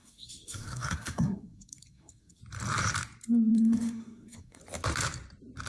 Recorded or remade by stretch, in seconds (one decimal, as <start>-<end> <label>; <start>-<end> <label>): 0.0-2.4 remade; 2.4-3.5 recorded; 3.5-4.6 remade; 4.6-5.7 recorded